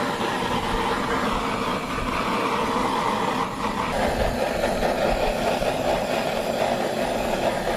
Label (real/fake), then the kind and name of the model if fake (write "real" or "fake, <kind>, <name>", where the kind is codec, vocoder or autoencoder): real